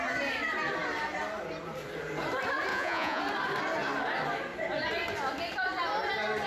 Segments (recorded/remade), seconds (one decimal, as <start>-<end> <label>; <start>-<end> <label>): 0.0-2.7 recorded; 2.7-3.2 remade; 3.2-6.5 recorded